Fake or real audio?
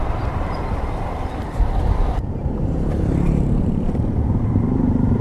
fake